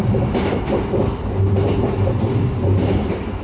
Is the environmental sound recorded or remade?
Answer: recorded